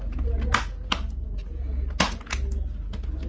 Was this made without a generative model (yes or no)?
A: yes